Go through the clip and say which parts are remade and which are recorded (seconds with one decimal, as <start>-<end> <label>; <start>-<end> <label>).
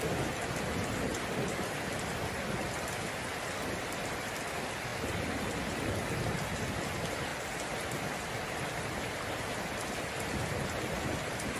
0.0-11.6 recorded